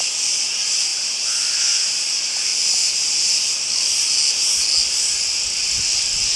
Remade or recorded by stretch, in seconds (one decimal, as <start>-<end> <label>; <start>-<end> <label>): 0.0-0.9 recorded; 0.9-2.1 remade; 2.1-6.4 recorded

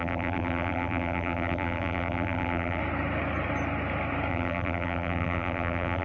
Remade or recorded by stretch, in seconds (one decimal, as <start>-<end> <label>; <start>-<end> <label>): 0.0-2.8 remade; 2.8-4.3 recorded; 4.3-6.0 remade

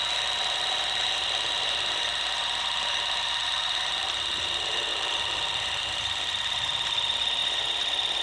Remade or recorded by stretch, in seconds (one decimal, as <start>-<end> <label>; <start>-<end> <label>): 0.0-2.1 remade; 2.1-2.6 recorded; 2.6-7.4 remade; 7.4-8.2 recorded

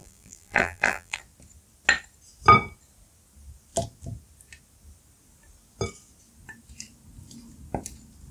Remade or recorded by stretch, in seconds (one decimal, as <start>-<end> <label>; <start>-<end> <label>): 0.0-1.2 remade; 1.2-8.3 recorded

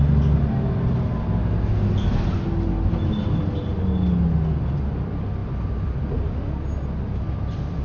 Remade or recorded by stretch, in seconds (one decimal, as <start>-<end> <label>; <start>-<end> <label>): 0.0-7.8 recorded